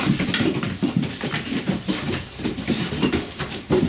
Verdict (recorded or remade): recorded